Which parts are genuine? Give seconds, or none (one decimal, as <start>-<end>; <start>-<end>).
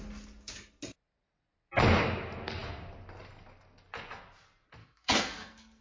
0.0-4.8